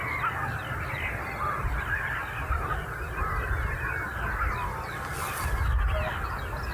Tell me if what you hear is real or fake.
real